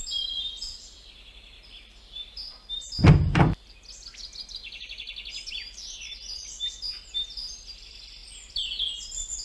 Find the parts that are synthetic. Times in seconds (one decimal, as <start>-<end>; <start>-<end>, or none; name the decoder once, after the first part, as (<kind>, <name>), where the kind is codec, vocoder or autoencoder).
0.0-4.4 (vocoder, BigVGAN v2); 5.5-9.4